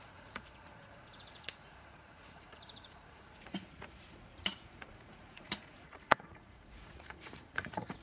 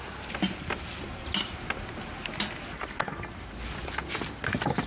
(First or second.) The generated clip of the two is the first